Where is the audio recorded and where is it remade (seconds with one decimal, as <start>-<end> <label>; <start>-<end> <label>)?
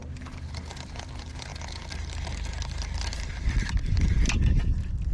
0.0-5.1 recorded